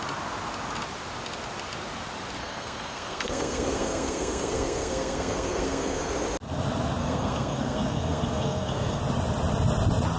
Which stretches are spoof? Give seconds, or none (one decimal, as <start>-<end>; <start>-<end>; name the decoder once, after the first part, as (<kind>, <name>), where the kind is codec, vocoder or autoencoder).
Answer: 2.4-6.1 (codec, SNAC); 7.0-9.0